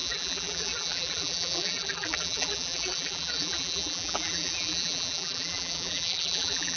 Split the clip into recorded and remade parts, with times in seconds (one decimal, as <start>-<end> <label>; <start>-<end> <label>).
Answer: 0.0-6.8 remade